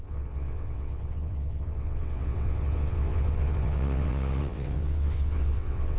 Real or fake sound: fake